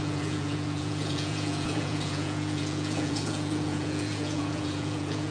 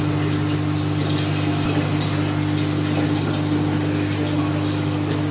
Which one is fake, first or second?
first